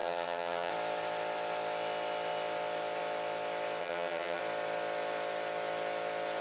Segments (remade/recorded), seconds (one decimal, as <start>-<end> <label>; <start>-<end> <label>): 0.0-0.7 remade; 0.7-3.8 recorded; 3.8-4.4 remade; 4.4-6.4 recorded